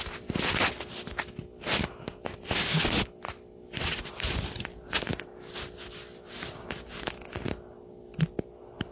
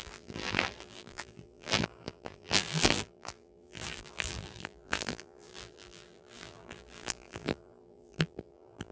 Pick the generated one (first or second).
second